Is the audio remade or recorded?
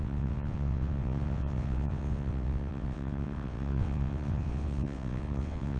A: remade